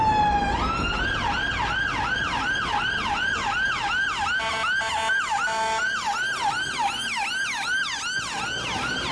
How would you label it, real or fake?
real